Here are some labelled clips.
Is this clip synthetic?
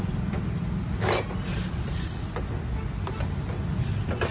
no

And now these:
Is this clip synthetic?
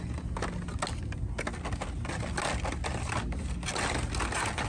no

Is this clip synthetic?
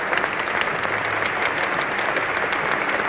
no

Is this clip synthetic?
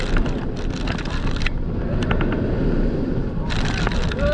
no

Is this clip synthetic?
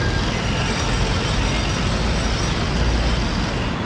no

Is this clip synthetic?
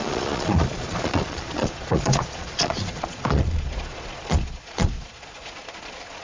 yes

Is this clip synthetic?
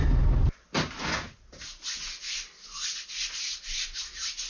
no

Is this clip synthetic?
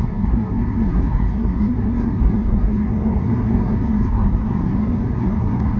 yes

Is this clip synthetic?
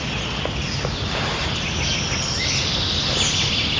no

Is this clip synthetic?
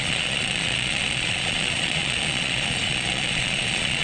yes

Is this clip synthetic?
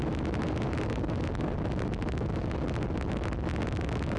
no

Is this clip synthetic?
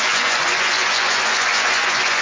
yes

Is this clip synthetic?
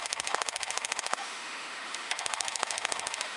yes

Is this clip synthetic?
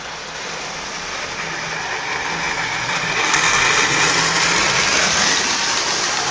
no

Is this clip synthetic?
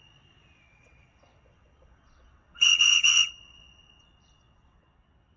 yes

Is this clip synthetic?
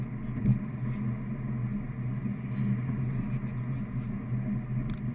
no